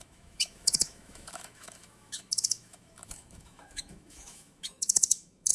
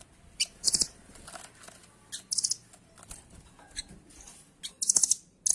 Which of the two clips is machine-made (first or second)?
first